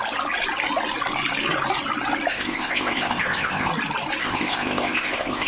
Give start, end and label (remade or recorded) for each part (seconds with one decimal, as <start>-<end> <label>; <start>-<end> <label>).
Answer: 0.0-2.3 recorded; 2.3-3.7 remade; 3.7-4.2 recorded; 4.2-5.5 remade